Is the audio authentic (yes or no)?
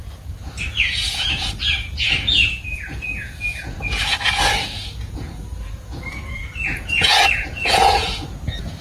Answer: no